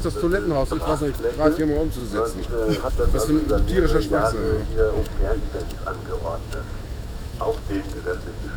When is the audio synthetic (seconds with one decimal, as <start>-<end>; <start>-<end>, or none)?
0.0-8.6